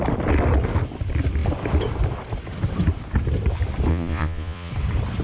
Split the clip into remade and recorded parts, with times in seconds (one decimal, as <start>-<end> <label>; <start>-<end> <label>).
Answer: 0.0-3.9 recorded; 3.9-4.7 remade; 4.7-5.2 recorded